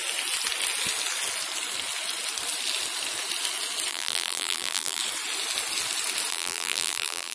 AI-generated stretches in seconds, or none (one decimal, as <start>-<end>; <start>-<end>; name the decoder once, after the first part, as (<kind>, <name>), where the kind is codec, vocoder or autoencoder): 3.9-5.0 (vocoder, BigVGAN v2); 6.3-7.3